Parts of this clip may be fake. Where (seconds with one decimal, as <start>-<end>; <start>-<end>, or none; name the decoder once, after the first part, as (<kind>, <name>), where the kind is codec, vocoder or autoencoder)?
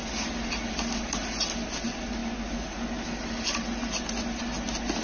none